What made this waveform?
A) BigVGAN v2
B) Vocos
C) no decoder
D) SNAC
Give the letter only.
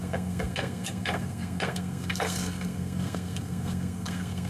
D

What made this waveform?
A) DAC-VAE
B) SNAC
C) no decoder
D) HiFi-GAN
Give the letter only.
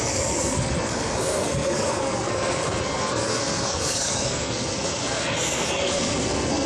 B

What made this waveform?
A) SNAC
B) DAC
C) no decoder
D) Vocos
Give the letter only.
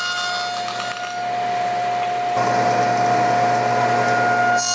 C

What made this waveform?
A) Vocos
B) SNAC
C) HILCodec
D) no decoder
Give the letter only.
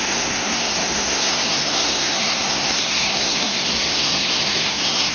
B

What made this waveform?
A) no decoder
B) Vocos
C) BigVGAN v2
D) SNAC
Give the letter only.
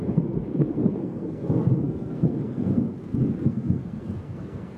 D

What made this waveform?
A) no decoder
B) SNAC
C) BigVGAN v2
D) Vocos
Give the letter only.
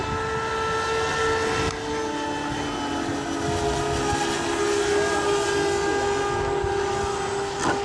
A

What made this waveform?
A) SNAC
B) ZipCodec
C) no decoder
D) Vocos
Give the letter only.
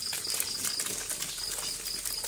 C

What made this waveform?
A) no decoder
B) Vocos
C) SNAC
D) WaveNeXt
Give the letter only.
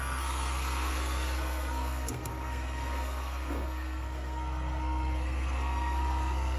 C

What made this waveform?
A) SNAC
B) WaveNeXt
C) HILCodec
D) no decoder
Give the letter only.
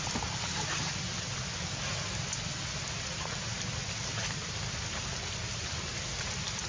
D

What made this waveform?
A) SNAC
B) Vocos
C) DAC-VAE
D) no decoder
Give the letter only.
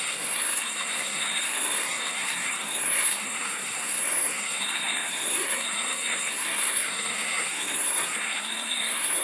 A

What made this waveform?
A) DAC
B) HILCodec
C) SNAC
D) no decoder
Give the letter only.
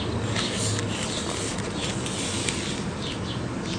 D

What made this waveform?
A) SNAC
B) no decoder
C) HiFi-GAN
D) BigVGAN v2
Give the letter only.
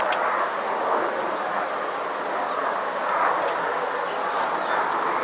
B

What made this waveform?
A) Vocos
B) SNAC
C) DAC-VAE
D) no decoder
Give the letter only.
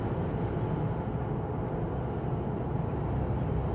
D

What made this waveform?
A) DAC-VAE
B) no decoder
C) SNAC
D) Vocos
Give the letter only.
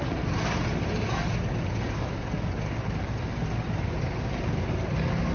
B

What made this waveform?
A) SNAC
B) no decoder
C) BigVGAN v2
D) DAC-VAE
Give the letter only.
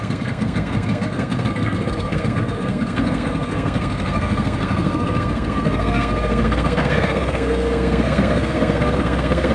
A